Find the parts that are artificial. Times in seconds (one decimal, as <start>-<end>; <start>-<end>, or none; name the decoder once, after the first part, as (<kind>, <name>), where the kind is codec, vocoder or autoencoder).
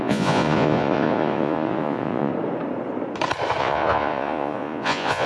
0.0-2.3 (vocoder, Vocos); 3.6-5.3